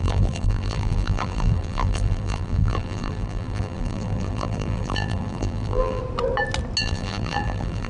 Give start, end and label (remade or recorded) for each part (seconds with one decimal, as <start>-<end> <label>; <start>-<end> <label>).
0.0-6.0 remade; 6.0-6.8 recorded; 6.8-7.9 remade